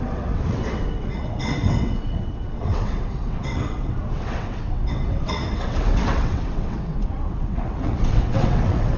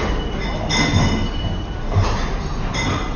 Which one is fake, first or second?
first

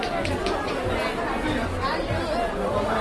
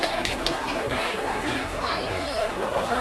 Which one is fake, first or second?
second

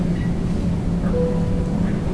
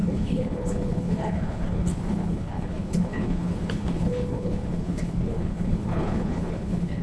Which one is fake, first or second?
second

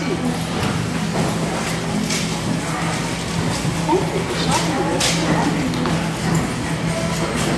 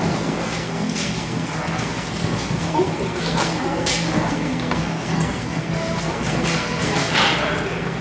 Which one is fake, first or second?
second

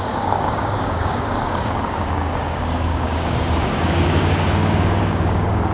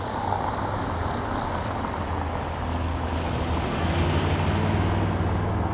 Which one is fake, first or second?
first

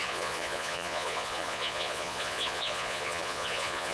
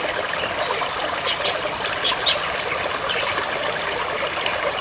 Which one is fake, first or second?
first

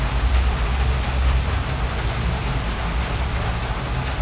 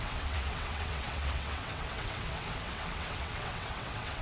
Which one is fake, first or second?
second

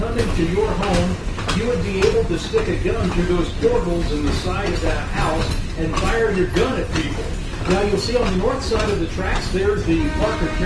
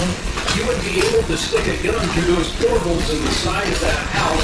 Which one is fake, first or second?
second